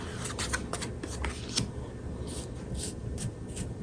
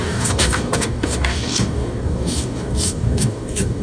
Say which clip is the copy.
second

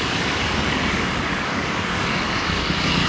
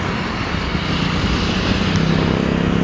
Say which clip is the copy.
first